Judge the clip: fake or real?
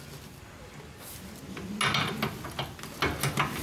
real